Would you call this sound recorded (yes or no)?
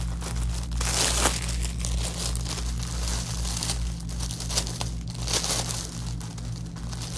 yes